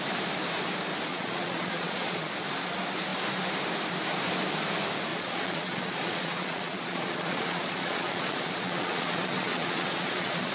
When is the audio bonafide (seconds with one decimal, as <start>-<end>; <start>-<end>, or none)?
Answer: 0.0-1.1; 2.3-5.1